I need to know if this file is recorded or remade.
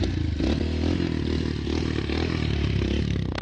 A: recorded